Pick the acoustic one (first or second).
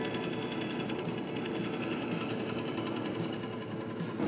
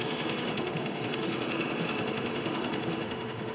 first